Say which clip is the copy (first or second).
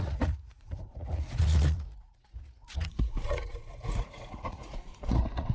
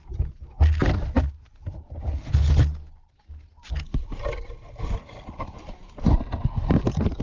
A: first